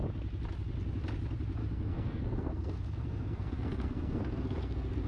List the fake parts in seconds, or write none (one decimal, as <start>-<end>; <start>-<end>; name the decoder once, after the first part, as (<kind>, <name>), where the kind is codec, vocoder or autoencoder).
1.6-5.1 (codec, SNAC)

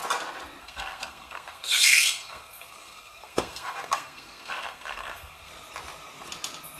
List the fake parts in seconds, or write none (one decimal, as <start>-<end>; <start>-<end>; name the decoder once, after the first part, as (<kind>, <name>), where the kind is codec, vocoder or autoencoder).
0.6-5.5 (codec, SNAC)